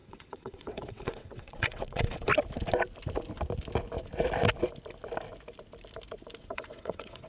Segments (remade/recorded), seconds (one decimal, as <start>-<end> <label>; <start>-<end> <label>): 0.0-2.3 remade; 2.3-6.4 recorded; 6.4-7.3 remade